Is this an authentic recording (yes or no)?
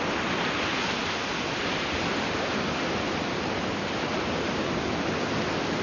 yes